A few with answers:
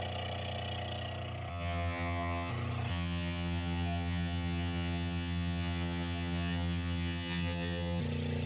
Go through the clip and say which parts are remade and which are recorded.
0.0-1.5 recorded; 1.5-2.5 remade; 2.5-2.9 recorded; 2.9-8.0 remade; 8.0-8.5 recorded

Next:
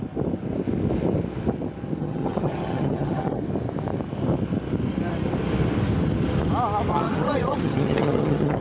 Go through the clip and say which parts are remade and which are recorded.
0.0-2.0 recorded; 2.0-3.4 remade; 3.4-6.9 recorded; 6.9-8.6 remade

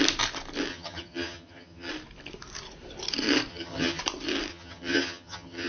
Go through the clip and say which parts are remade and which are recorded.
0.0-0.7 recorded; 0.7-1.9 remade; 1.9-3.5 recorded; 3.5-4.0 remade; 4.0-4.5 recorded; 4.5-5.7 remade

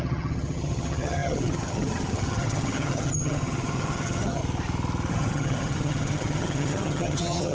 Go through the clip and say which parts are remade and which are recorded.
0.0-4.4 remade; 4.4-5.1 recorded; 5.1-7.5 remade

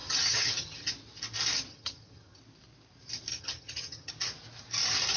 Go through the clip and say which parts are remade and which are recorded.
0.0-0.9 remade; 0.9-1.7 recorded; 1.7-2.4 remade; 2.4-3.3 recorded; 3.3-4.1 remade; 4.1-5.2 recorded